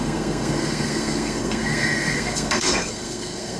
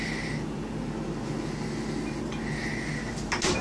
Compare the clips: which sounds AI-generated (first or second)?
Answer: first